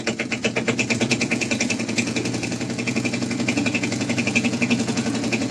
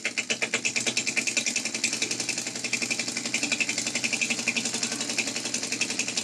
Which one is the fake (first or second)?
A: first